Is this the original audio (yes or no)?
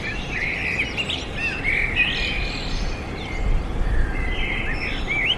yes